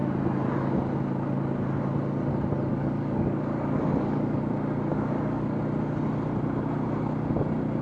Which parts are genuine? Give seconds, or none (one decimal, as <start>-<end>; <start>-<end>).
0.0-2.7; 4.4-4.9; 5.6-7.8